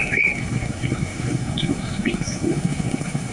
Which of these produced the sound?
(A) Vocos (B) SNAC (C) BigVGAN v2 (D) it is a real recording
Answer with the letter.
B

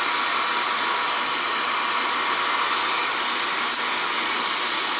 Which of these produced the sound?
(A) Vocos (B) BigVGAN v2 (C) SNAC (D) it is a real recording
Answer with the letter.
D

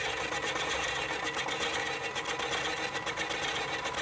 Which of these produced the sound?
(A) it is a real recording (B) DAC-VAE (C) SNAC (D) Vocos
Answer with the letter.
A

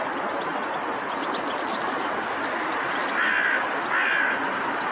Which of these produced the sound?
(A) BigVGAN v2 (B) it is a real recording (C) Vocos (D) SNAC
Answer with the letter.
B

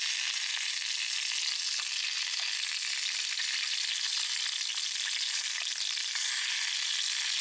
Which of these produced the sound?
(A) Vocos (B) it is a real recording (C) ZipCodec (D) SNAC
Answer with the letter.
B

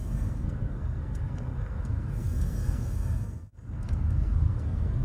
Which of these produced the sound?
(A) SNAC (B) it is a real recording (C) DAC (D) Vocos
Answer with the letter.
A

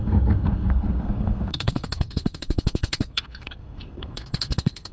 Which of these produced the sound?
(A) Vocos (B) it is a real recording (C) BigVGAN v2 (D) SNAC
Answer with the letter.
D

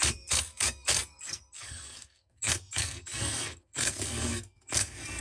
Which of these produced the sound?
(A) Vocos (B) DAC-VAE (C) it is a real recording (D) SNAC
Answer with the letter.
D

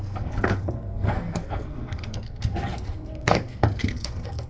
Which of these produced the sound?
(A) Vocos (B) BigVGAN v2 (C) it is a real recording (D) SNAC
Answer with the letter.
D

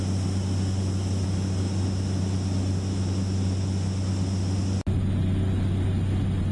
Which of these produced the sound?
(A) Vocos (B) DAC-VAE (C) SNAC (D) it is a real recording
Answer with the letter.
D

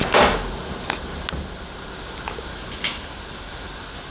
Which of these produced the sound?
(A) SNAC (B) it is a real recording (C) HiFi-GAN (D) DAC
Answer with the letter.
B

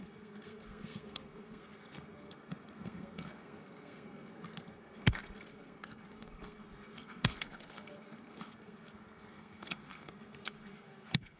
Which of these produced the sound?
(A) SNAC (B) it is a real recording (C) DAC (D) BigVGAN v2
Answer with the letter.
A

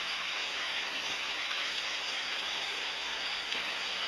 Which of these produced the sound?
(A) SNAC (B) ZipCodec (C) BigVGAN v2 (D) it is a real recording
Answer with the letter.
A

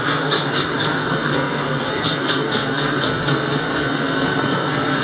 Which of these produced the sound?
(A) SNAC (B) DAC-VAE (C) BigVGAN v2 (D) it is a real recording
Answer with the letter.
A